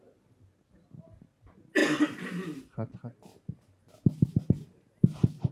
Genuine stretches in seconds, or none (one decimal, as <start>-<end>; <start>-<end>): 0.0-1.8; 5.0-5.5